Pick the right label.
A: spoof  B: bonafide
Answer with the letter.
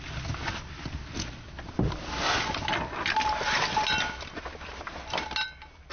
B